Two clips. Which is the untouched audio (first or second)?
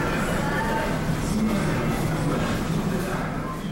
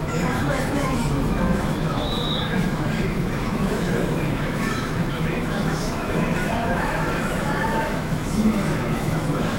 first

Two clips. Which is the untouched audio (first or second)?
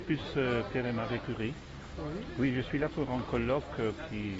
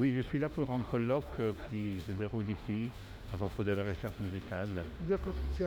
first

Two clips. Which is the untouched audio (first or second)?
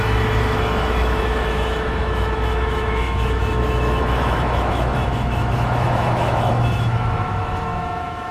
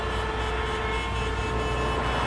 second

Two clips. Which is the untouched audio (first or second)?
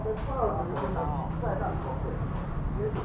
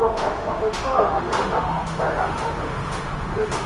first